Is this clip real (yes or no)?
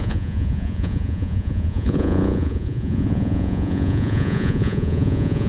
no